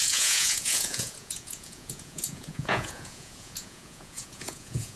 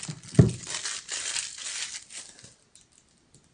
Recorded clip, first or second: second